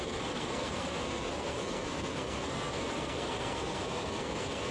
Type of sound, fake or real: fake